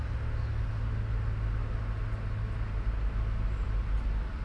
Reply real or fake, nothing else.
real